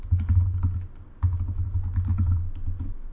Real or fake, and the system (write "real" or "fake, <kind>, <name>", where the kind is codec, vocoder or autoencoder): real